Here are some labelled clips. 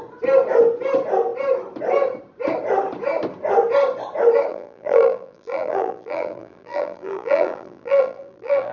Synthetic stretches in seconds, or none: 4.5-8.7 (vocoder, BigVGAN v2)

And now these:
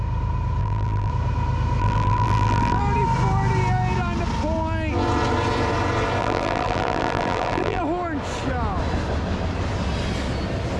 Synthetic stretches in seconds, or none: 0.6-1.1 (vocoder, BigVGAN v2); 1.8-2.8; 6.2-7.8

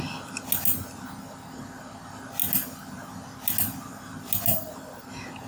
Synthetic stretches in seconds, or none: 4.5-5.1 (vocoder, BigVGAN v2)

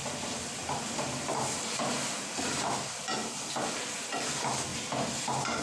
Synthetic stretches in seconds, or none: 4.7-5.6 (vocoder, BigVGAN v2)

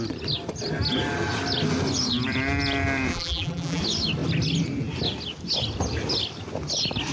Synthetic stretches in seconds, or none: 3.1-3.8 (vocoder, BigVGAN v2)

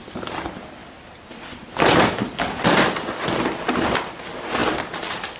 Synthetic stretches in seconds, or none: 0.8-4.0 (vocoder, BigVGAN v2); 4.6-5.4

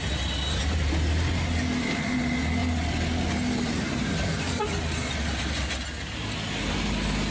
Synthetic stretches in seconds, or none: none